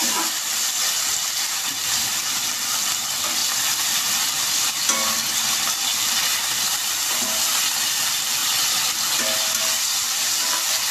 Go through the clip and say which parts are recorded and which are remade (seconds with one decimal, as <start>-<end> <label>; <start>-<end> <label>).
0.0-3.4 remade; 3.4-7.8 recorded; 7.8-8.4 remade; 8.4-9.6 recorded; 9.6-10.9 remade